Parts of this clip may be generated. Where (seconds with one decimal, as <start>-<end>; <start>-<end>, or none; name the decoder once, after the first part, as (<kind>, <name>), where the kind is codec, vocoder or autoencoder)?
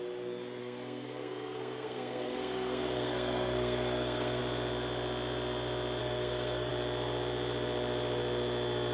0.6-4.4 (codec, SNAC); 6.0-6.7